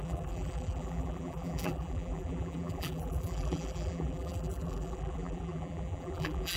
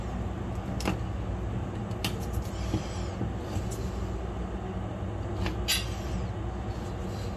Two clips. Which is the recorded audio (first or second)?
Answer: second